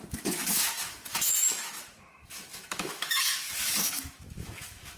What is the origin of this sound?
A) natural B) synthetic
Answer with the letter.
B